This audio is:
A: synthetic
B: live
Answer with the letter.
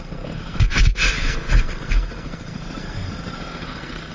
A